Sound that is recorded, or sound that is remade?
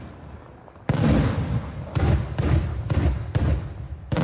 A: recorded